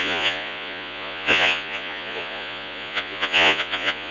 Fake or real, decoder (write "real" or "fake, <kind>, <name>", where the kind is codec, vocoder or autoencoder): fake, vocoder, Vocos